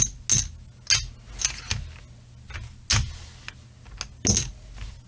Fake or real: real